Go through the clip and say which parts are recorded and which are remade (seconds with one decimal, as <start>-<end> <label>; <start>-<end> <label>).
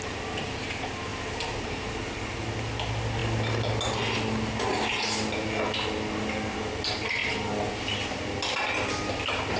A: 0.0-1.1 recorded; 1.1-1.9 remade; 1.9-9.6 recorded